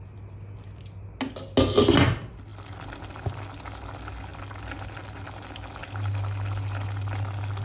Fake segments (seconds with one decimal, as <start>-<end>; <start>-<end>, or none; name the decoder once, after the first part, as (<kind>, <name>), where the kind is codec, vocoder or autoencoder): none